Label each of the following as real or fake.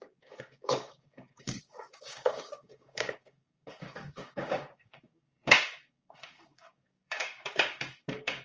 fake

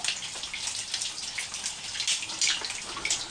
real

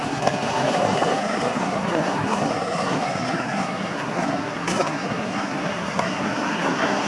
fake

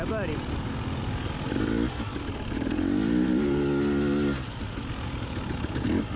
real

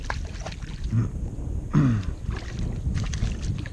real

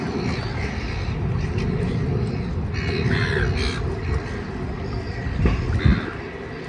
real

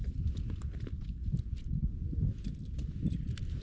fake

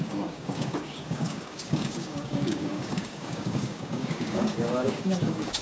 fake